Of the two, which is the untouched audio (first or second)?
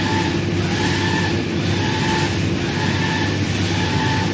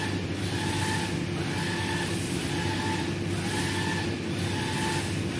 second